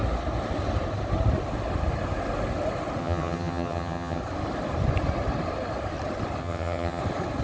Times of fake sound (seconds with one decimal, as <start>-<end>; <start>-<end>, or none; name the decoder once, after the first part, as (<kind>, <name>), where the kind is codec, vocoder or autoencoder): 3.0-4.2 (vocoder, HiFi-GAN); 6.4-7.0

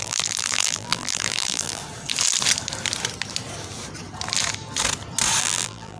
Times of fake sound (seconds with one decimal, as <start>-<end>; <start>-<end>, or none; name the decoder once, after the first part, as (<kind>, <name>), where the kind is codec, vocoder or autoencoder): 0.0-1.8 (vocoder, BigVGAN v2); 5.4-6.0

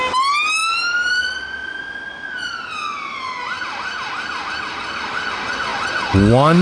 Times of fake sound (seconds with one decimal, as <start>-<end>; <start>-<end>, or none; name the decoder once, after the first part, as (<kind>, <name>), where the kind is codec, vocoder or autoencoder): none

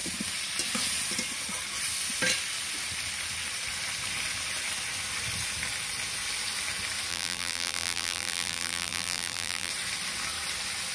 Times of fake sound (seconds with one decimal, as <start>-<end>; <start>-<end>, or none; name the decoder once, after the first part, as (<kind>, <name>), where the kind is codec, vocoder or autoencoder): 7.1-9.7 (vocoder, BigVGAN v2)

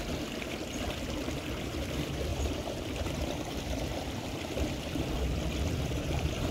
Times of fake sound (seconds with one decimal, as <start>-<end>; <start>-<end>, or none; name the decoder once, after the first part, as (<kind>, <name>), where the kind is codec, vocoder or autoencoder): 0.0-6.5 (vocoder, BigVGAN v2)

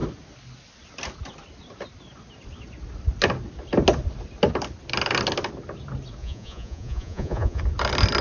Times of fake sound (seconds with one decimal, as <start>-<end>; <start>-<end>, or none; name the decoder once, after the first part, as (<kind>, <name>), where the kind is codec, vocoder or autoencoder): 6.2-7.6 (vocoder, Vocos)